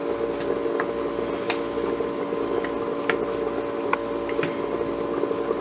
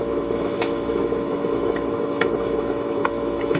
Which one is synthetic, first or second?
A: second